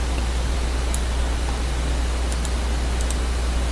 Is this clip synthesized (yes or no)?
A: no